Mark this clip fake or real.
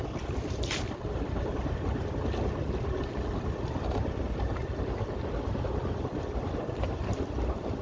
real